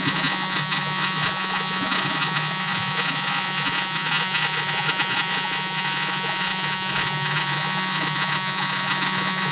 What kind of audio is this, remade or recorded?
remade